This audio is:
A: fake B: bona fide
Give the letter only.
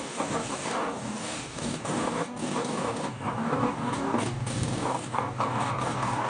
A